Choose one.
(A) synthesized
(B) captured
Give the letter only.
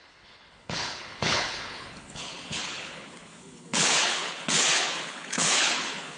A